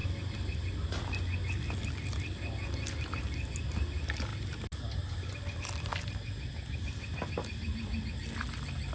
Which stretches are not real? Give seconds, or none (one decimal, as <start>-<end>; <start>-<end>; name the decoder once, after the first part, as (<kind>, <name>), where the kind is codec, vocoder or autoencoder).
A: none